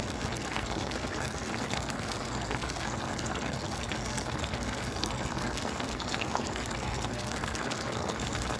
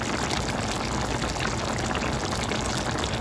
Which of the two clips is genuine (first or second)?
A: second